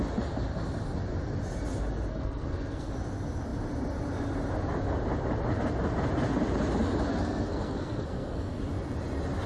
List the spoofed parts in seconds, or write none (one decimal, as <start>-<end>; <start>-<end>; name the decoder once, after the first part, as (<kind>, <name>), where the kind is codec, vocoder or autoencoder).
2.1-2.9 (codec, SNAC); 7.1-8.6

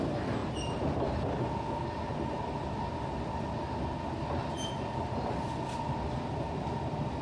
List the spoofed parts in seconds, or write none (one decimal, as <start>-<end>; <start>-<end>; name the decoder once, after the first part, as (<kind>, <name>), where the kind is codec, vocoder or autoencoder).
none

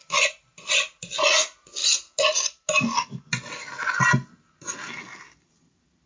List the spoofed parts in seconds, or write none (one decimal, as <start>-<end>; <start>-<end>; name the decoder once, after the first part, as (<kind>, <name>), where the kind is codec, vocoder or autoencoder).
none

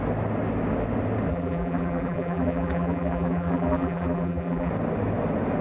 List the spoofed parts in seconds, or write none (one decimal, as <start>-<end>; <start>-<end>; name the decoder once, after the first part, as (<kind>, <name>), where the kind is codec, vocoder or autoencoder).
1.3-4.7 (vocoder, BigVGAN v2)

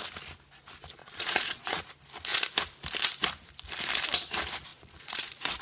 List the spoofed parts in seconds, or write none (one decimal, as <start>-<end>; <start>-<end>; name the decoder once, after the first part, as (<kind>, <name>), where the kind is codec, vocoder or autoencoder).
1.0-1.8 (vocoder, Vocos); 4.7-5.6

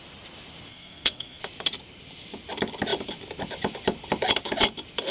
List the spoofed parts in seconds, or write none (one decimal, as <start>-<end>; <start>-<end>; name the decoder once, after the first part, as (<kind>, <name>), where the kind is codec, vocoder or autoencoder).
0.7-1.4 (codec, SNAC)

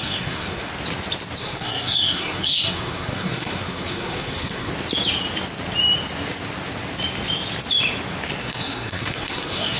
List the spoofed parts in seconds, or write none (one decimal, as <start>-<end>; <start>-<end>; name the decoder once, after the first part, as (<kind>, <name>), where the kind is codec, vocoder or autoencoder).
0.0-0.7 (codec, SNAC); 1.4-4.7; 8.4-9.8

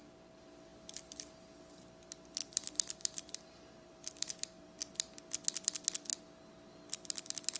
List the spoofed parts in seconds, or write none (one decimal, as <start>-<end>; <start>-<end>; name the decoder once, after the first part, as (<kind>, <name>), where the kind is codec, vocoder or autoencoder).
2.4-4.8 (vocoder, BigVGAN v2)